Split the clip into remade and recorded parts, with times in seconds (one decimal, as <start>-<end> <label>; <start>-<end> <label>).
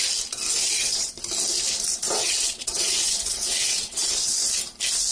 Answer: 0.0-0.6 recorded; 0.6-1.1 remade; 1.1-2.1 recorded; 2.1-4.4 remade; 4.4-5.1 recorded